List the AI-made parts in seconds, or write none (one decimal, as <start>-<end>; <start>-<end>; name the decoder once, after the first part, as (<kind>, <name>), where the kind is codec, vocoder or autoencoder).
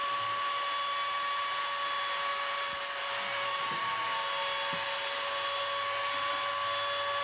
2.3-6.3 (vocoder, BigVGAN v2)